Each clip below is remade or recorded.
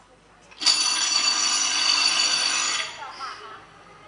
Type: recorded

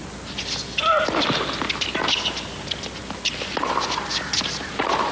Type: recorded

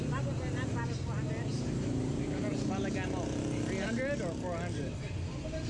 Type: recorded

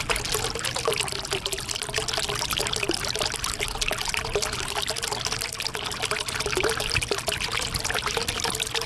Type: recorded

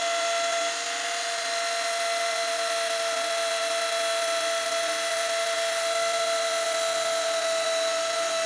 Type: recorded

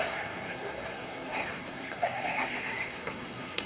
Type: remade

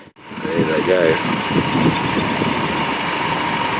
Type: recorded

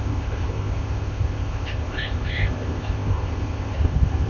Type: remade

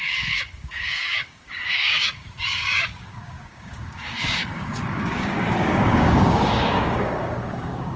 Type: remade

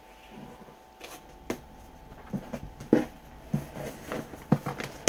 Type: recorded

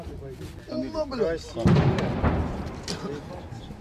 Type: recorded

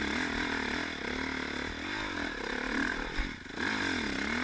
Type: recorded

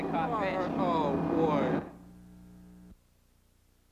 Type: recorded